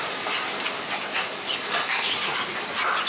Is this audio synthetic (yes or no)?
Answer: no